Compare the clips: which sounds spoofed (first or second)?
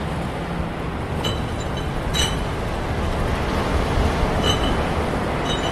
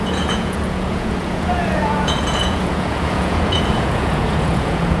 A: second